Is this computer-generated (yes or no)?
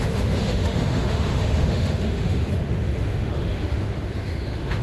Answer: yes